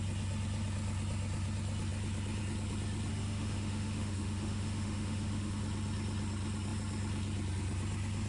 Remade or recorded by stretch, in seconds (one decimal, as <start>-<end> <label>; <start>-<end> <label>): 0.0-3.1 recorded; 3.1-5.6 remade; 5.6-8.3 recorded